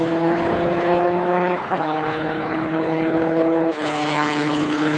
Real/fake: fake